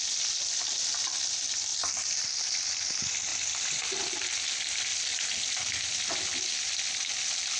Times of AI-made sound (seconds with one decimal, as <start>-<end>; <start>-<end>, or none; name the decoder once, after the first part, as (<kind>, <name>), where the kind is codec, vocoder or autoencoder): 1.7-2.8 (vocoder, BigVGAN v2); 3.3-4.3; 4.9-6.2